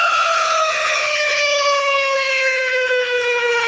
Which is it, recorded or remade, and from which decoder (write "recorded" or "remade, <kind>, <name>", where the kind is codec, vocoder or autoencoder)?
remade, codec, HILCodec